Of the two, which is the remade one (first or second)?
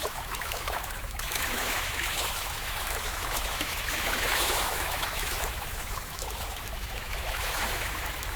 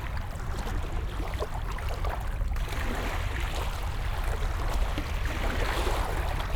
first